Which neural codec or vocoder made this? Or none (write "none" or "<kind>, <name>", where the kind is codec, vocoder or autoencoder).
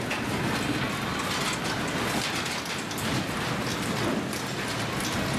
none